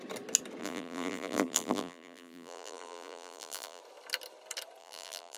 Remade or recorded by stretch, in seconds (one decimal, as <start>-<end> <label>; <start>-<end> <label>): 0.0-0.6 recorded; 0.6-3.8 remade; 3.8-4.8 recorded; 4.8-5.4 remade